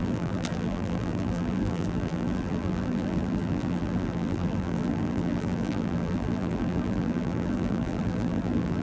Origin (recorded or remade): remade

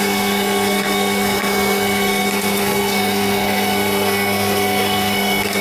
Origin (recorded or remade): remade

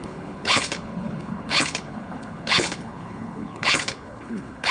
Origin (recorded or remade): remade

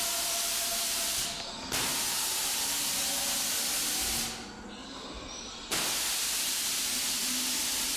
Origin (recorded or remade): recorded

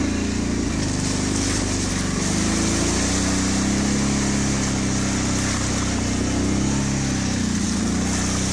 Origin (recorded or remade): recorded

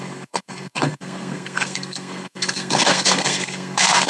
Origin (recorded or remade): remade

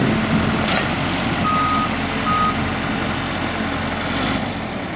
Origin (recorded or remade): recorded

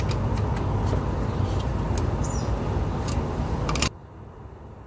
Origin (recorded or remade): recorded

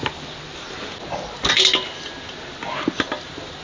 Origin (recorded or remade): recorded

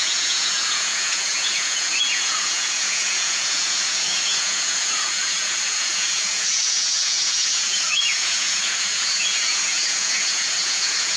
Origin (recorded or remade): remade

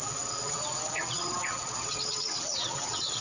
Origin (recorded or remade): remade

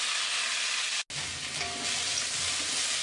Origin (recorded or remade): recorded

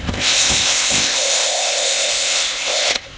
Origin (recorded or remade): remade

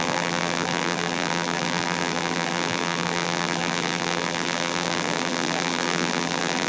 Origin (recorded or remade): remade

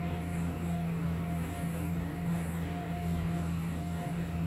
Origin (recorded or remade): remade